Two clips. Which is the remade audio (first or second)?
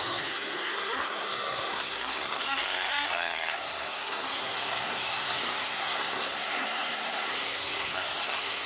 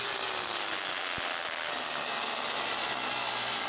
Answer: first